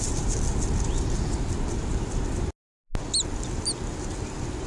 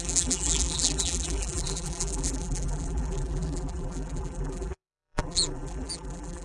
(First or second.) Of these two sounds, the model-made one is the second